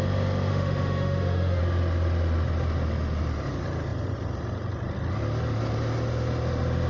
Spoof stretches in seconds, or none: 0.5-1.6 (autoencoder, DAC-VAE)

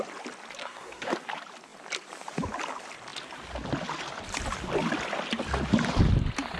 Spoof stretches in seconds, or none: 0.6-1.1 (codec, SNAC)

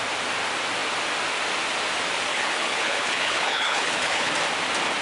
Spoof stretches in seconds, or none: 2.3-4.3 (codec, HILCodec)

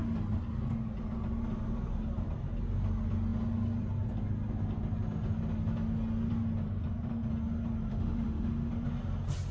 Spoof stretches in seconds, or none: 7.9-8.7 (autoencoder, DAC-VAE)

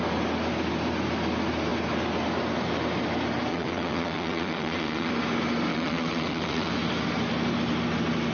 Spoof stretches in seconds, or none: 3.5-5.1 (vocoder, WaveNeXt); 5.7-6.7

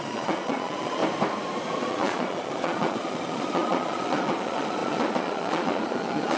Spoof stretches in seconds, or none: 0.0-1.0 (vocoder, Vocos); 1.8-6.4